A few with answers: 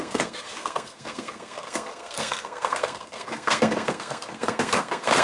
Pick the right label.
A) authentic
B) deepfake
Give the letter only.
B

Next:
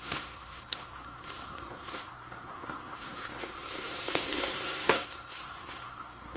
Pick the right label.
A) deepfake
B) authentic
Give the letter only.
A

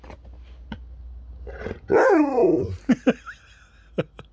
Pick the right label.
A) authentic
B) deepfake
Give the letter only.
A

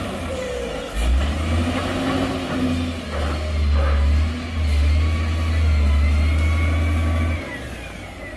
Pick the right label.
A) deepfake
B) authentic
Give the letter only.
B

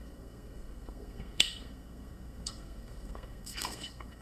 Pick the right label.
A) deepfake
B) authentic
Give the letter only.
A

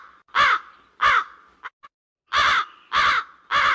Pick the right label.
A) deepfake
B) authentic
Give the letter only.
B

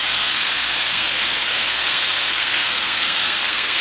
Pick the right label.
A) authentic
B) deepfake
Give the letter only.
B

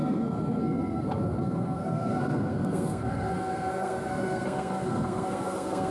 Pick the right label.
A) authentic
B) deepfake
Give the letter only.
B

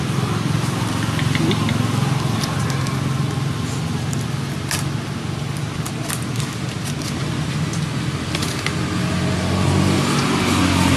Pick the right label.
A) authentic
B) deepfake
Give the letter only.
A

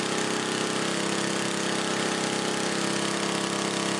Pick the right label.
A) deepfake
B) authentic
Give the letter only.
B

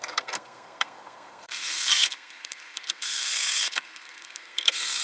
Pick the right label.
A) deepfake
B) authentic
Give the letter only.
A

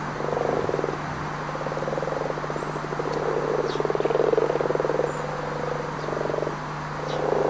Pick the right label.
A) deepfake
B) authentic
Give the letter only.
B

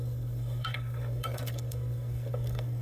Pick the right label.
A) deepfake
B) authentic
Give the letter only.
A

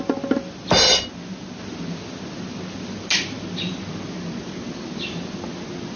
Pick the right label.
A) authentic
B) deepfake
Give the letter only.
A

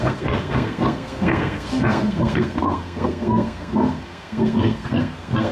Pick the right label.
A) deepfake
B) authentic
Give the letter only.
A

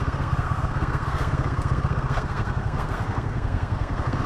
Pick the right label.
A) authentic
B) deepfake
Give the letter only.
B